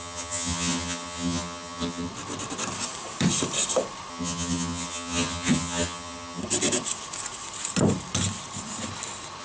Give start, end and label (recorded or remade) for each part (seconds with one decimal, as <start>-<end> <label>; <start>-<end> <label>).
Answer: 0.0-2.1 remade; 2.1-4.1 recorded; 4.1-6.4 remade; 6.4-9.4 recorded